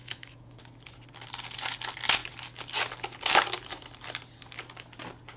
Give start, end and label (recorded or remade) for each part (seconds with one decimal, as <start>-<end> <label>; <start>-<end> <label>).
0.0-0.6 remade; 0.6-5.4 recorded